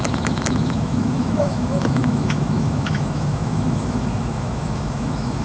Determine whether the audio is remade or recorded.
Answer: remade